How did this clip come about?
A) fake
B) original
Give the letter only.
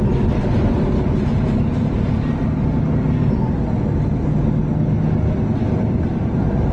B